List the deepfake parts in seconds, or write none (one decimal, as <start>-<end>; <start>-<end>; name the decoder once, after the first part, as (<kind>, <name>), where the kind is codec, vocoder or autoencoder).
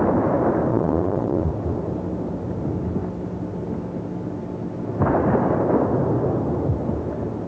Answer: 0.7-1.5 (vocoder, Vocos)